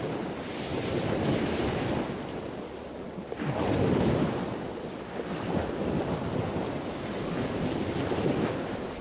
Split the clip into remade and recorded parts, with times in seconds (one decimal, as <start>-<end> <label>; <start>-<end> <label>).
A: 0.0-9.0 recorded

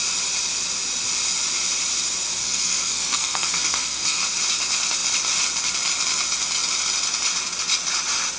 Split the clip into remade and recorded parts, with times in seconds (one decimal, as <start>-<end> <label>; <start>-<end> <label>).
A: 0.0-2.4 recorded; 2.4-4.2 remade; 4.2-8.4 recorded

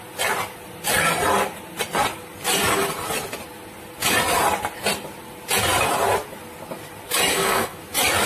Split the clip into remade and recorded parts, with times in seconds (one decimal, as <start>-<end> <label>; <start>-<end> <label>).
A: 0.0-7.3 recorded; 7.3-7.8 remade; 7.8-8.3 recorded

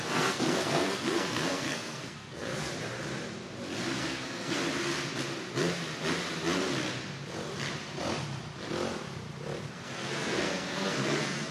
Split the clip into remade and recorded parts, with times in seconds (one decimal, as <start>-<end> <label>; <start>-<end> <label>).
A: 0.0-2.7 remade; 2.7-4.0 recorded; 4.0-4.6 remade; 4.6-9.7 recorded; 9.7-11.5 remade